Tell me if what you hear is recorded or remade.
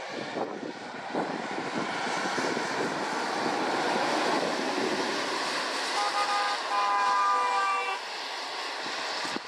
recorded